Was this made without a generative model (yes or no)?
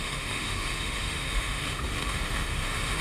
no